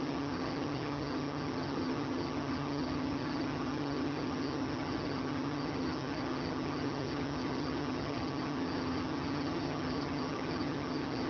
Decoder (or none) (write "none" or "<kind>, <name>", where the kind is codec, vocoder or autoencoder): vocoder, HiFi-GAN